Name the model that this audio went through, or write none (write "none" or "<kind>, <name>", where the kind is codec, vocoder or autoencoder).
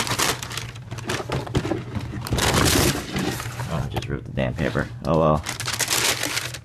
none